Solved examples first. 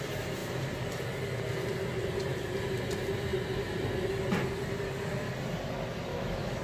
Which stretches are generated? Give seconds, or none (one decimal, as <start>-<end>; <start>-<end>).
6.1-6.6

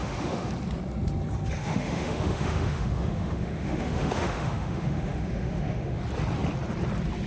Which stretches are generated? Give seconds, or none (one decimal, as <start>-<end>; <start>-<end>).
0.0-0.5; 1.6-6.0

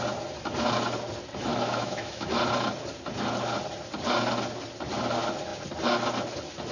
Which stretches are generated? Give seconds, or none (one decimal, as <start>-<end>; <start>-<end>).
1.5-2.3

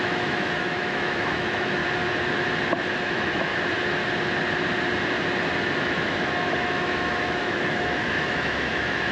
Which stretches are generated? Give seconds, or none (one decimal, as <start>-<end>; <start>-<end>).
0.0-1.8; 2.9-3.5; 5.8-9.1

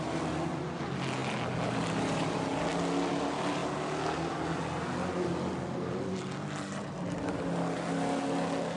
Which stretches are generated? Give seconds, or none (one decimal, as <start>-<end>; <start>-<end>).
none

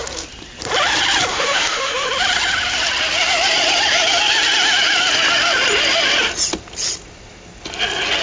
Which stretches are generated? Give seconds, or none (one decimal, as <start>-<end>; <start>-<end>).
1.3-2.1

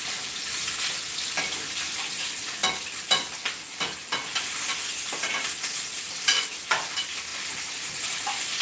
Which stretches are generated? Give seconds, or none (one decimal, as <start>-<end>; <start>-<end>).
none

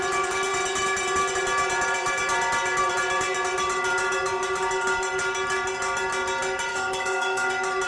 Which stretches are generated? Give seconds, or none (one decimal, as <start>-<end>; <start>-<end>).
6.7-7.5